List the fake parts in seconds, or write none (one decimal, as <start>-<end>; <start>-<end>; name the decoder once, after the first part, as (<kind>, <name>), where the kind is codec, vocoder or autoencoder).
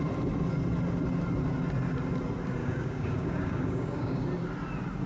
2.6-4.2 (codec, DAC)